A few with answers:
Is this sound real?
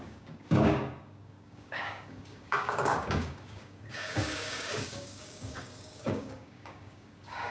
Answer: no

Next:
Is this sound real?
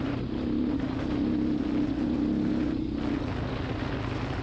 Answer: yes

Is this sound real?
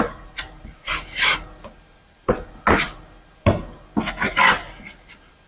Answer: yes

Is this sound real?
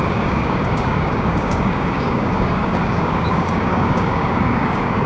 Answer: no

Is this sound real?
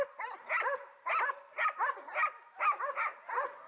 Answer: yes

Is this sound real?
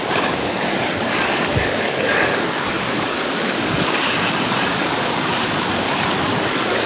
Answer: no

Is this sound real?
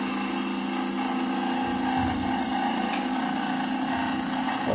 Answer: yes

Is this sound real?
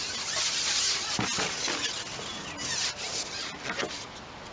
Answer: yes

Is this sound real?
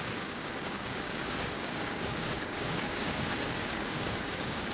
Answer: no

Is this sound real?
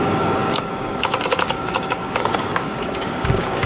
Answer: no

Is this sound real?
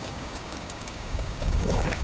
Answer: no